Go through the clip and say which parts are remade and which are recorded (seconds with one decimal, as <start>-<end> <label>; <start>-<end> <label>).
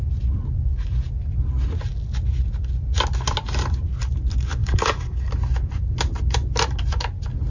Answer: 0.0-4.6 recorded; 4.6-5.3 remade; 5.3-7.5 recorded